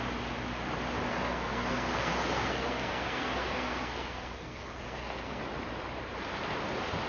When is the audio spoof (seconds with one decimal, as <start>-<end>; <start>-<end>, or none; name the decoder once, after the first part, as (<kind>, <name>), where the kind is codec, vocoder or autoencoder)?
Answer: 1.1-5.4 (codec, SNAC)